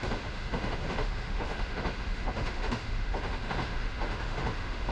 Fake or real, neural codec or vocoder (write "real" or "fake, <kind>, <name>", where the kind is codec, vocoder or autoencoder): fake, autoencoder, DAC-VAE